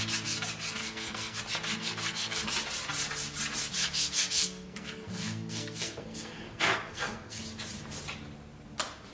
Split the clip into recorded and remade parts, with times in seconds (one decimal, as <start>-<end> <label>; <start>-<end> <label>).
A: 0.0-0.8 recorded; 0.8-1.4 remade; 1.4-1.8 recorded; 1.8-2.5 remade; 2.5-3.8 recorded; 3.8-7.4 remade; 7.4-9.1 recorded